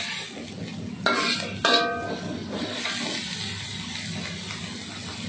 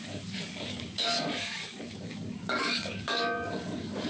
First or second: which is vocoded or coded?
second